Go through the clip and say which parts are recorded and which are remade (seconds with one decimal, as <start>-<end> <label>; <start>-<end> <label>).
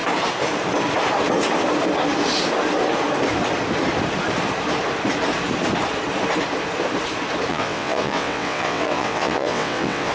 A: 0.0-7.5 recorded; 7.5-10.1 remade